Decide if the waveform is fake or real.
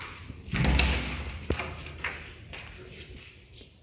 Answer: real